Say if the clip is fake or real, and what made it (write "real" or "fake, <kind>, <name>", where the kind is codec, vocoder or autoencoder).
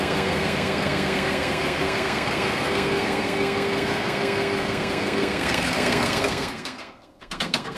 fake, codec, SNAC